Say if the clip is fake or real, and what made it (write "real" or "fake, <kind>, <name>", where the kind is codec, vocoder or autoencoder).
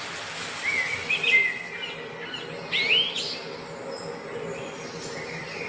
real